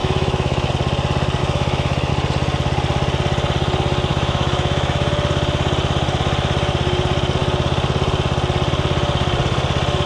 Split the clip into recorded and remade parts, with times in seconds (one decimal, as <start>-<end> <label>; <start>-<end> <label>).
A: 0.0-0.7 remade; 0.7-1.4 recorded; 1.4-2.1 remade; 2.1-4.1 recorded; 4.1-5.1 remade; 5.1-10.1 recorded